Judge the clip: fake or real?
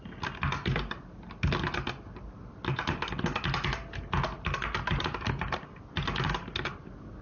real